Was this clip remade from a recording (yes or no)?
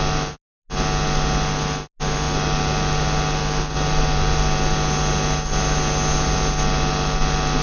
no